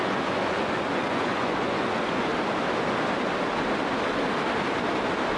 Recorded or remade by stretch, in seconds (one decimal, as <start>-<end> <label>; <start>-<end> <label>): 0.0-2.3 remade; 2.3-5.4 recorded